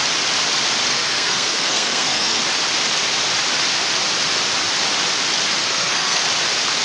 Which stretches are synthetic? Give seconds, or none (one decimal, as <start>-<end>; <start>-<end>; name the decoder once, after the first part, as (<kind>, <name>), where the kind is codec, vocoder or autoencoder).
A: 0.9-2.4 (codec, SNAC); 5.6-6.2